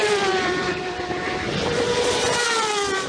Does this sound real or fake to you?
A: fake